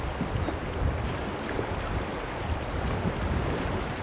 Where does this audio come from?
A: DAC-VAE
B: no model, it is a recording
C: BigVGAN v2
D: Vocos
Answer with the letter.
B